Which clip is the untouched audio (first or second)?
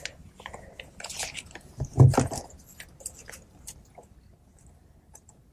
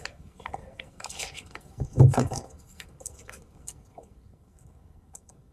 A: first